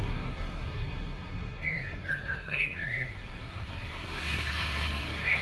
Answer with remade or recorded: remade